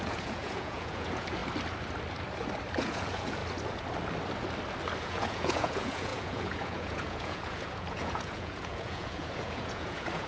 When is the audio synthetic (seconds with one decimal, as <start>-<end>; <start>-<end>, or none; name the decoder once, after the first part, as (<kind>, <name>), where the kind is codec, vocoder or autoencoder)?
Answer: 0.0-1.4 (vocoder, Vocos); 2.8-3.4; 5.0-10.3